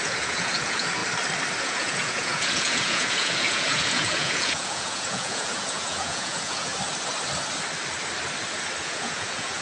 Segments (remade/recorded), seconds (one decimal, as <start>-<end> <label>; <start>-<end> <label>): 0.0-1.0 remade; 1.0-1.6 recorded; 1.6-6.7 remade; 6.7-8.8 recorded; 8.8-9.6 remade